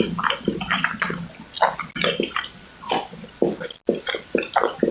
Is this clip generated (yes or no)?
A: no